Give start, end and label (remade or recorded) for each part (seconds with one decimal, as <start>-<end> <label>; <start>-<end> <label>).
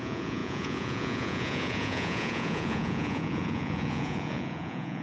0.0-5.0 remade